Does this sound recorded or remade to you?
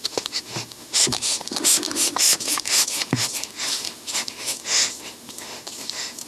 remade